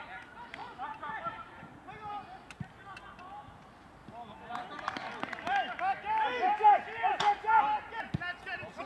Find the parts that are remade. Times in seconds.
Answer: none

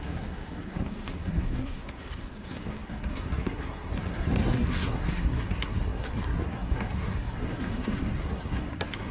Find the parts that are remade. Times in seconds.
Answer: 0.0-9.1 (codec, SNAC)

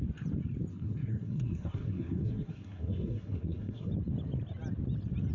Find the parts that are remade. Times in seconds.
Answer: 0.7-3.9 (codec, SNAC)

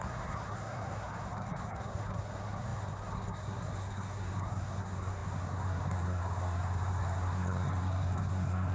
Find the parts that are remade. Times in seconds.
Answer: 0.0-8.7 (codec, SNAC)